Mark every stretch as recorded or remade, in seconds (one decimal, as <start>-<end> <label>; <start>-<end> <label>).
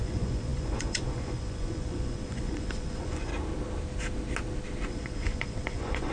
0.0-3.3 remade; 3.3-4.9 recorded; 4.9-6.1 remade